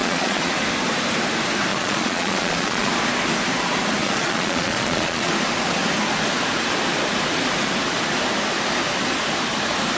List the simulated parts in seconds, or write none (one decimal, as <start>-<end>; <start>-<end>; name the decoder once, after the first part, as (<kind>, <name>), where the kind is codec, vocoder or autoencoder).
0.0-0.5 (vocoder, Vocos); 1.7-2.9; 4.0-5.3

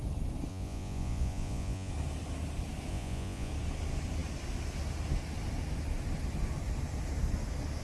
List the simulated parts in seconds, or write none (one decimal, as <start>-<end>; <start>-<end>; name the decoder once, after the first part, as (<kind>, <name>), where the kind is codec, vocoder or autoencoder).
0.5-1.9 (vocoder, Vocos); 2.9-3.5

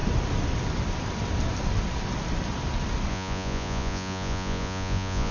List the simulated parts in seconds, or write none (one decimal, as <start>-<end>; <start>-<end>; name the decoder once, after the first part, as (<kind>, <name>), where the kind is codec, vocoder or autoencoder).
3.1-5.3 (vocoder, Vocos)